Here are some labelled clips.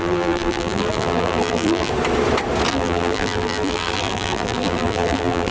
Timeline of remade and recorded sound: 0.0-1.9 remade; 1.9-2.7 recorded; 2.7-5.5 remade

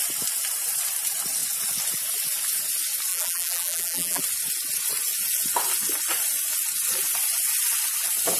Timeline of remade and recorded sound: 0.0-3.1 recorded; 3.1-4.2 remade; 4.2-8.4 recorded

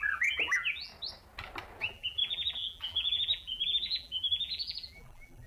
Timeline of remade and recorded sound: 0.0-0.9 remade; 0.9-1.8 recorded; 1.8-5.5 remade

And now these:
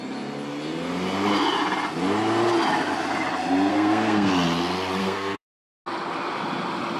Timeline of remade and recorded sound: 0.0-3.7 recorded; 3.7-4.3 remade; 4.3-5.0 recorded; 5.0-5.6 remade; 5.6-7.0 recorded

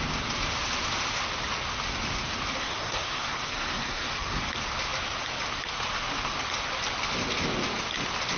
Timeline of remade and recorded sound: 0.0-2.6 recorded; 2.6-4.4 remade; 4.4-8.4 recorded

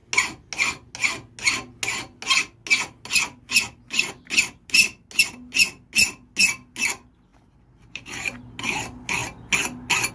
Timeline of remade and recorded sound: 0.0-7.3 recorded; 7.3-8.4 remade; 8.4-10.1 recorded

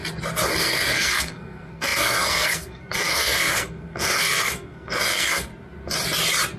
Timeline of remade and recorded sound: 0.0-0.6 recorded; 0.6-5.5 remade; 5.5-6.6 recorded

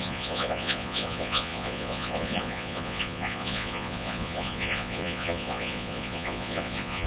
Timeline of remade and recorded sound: 0.0-7.1 remade